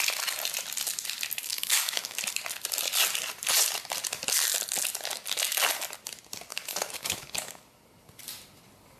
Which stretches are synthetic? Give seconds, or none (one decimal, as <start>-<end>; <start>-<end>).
1.4-2.2; 6.5-7.6